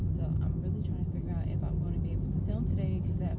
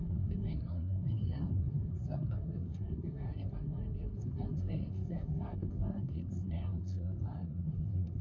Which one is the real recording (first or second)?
first